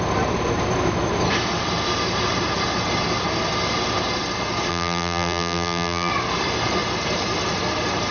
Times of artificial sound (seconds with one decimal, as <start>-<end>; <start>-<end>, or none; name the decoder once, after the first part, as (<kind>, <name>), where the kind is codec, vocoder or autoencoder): 4.7-6.1 (vocoder, BigVGAN v2)